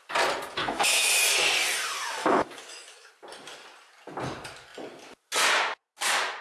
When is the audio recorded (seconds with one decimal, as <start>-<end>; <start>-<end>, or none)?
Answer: 0.0-0.6; 1.1-2.2; 3.1-6.4